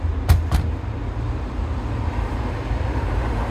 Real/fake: real